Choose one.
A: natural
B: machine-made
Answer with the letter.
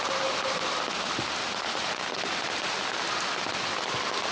A